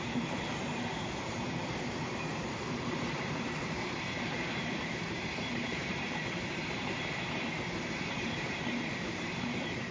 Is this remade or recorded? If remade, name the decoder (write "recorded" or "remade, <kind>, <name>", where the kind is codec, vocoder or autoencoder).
remade, vocoder, BigVGAN v2